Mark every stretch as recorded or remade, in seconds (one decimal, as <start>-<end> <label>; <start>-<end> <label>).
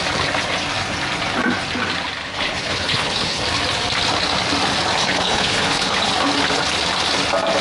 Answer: 0.0-2.2 recorded; 2.2-3.4 remade; 3.4-5.0 recorded; 5.0-6.1 remade; 6.1-7.6 recorded